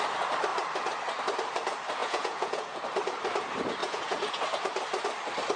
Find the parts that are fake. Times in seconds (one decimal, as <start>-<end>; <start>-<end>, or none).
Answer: 2.0-2.8; 3.8-4.4